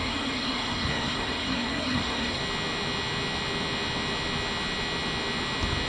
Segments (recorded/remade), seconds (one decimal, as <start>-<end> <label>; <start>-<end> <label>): 0.0-2.4 remade; 2.4-5.9 recorded